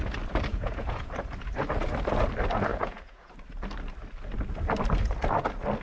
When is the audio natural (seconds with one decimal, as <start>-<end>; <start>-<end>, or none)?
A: 0.0-0.5; 1.1-2.7; 3.3-5.8